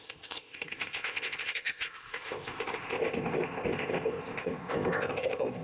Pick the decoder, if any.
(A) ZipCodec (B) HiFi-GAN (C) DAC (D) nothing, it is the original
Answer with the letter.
A